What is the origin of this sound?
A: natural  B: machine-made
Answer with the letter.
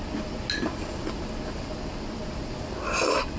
A